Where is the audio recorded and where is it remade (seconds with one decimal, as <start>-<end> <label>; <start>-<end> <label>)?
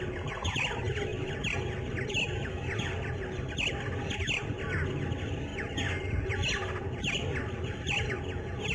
0.0-8.7 recorded